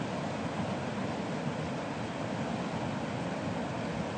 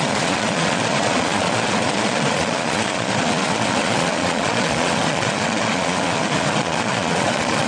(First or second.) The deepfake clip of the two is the second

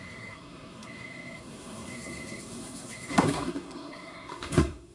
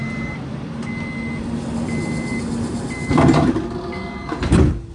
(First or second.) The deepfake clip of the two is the first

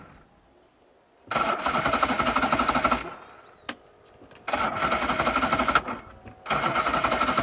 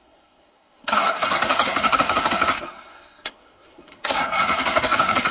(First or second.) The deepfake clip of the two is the second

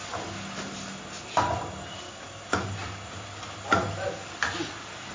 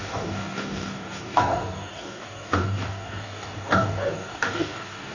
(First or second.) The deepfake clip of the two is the second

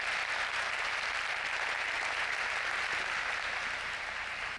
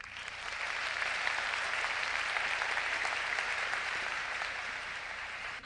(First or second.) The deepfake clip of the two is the second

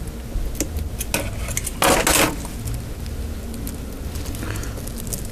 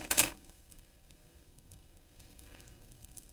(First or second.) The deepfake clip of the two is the second